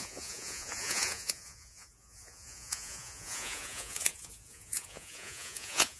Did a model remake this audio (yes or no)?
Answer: yes